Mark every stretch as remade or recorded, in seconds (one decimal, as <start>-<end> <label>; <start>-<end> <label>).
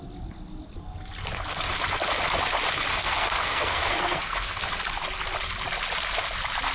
0.0-2.9 recorded; 2.9-4.6 remade; 4.6-6.7 recorded